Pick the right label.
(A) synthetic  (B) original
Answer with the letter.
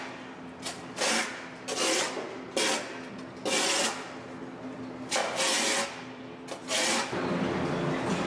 B